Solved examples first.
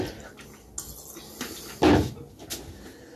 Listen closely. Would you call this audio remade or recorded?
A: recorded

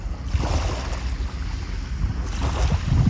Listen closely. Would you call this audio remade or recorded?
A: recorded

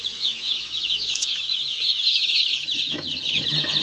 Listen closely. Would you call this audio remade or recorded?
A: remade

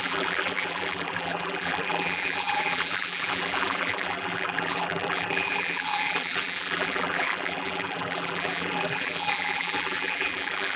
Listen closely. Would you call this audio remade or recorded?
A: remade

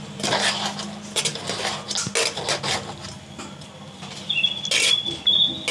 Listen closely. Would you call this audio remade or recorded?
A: recorded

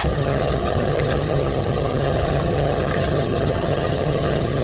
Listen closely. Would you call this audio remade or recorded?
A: remade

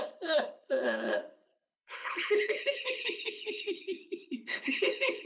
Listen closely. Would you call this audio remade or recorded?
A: remade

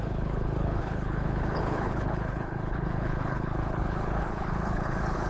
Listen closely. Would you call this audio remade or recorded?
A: remade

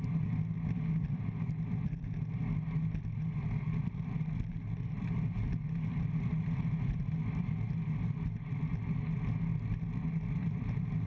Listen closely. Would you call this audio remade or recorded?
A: recorded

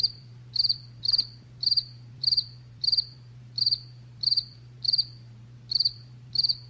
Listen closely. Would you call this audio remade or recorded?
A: remade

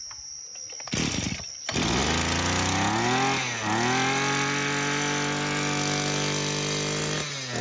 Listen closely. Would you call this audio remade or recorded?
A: recorded